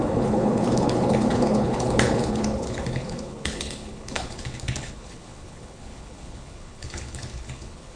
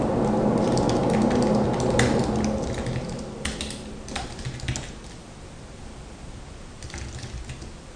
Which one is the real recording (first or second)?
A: second